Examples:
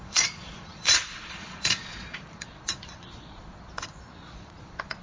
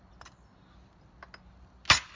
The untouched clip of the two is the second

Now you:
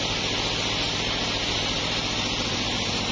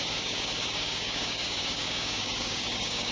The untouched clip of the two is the first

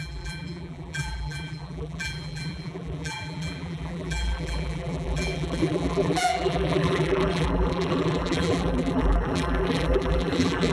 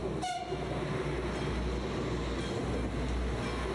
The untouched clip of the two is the second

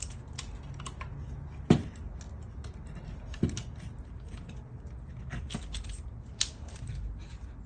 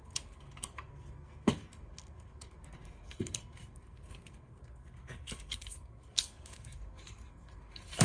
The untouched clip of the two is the first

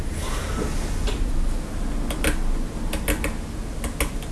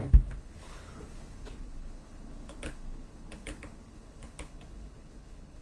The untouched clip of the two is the first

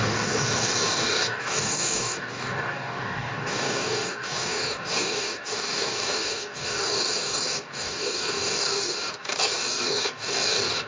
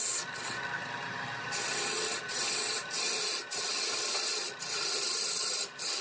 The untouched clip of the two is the second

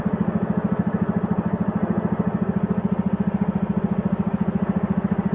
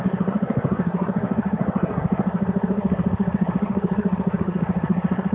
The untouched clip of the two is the first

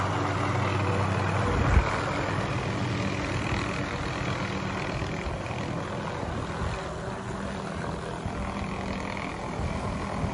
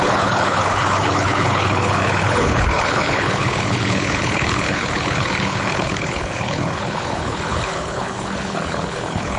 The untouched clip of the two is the first